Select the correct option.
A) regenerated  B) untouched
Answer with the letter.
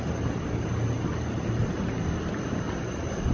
B